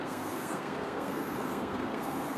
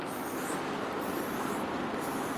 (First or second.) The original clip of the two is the second